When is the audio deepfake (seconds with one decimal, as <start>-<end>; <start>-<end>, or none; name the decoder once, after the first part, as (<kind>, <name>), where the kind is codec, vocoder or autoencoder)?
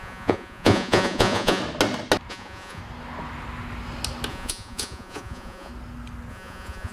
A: 0.0-1.6 (vocoder, Vocos); 2.3-2.8; 4.3-5.7; 6.3-6.9